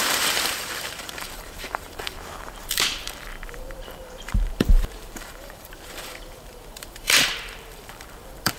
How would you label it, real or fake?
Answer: fake